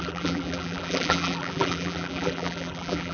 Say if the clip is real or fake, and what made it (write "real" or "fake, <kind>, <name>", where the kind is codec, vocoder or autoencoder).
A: fake, vocoder, BigVGAN v2